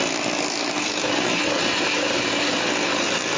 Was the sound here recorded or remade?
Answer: recorded